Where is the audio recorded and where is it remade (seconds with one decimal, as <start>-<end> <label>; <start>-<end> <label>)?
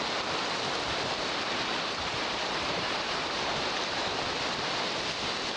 0.0-1.7 recorded; 1.7-3.8 remade; 3.8-5.6 recorded